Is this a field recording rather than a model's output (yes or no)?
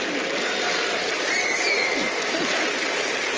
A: yes